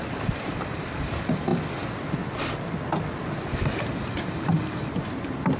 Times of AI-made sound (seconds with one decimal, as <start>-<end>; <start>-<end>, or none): 0.0-1.5; 4.9-5.6